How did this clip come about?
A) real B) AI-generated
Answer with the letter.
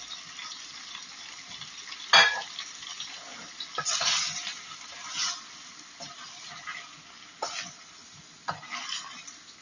A